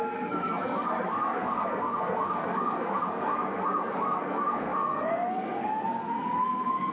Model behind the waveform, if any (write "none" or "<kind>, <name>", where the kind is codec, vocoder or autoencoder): codec, SNAC